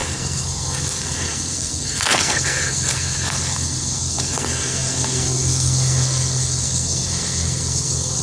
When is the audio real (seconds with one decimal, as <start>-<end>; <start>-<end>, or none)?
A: none